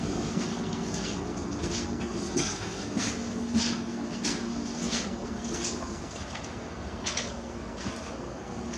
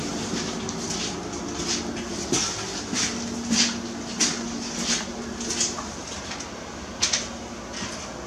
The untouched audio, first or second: second